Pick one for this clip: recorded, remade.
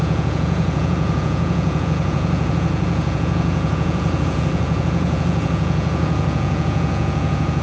remade